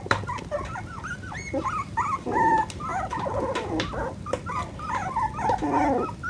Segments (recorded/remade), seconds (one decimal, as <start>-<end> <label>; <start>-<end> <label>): 0.0-6.3 recorded